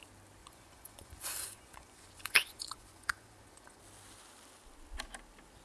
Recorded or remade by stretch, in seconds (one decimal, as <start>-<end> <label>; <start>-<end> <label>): 0.0-0.4 recorded; 0.4-3.8 remade; 3.8-5.6 recorded

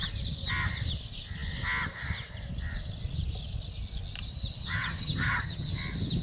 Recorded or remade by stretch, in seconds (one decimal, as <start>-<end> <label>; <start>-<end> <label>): 0.0-4.6 recorded; 4.6-5.8 remade; 5.8-6.2 recorded

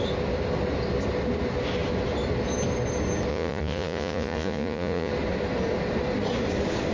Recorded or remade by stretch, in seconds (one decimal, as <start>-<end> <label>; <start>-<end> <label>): 0.0-3.3 recorded; 3.3-5.1 remade; 5.1-6.9 recorded